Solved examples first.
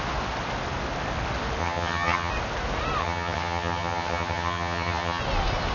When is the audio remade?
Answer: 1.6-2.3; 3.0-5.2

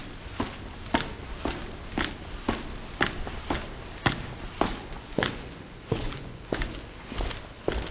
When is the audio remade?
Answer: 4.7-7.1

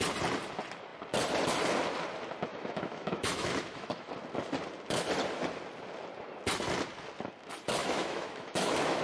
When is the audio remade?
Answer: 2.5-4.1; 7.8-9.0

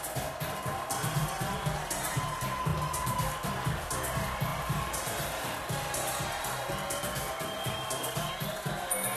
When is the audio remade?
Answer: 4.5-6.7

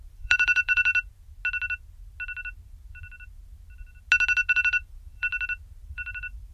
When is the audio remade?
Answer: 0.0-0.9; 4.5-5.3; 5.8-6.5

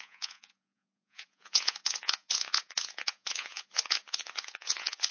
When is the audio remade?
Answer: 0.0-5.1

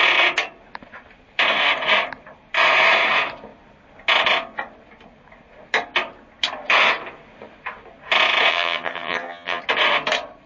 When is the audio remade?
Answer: 8.5-9.6

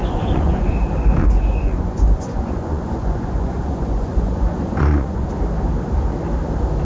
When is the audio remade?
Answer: 0.0-0.7; 1.2-5.3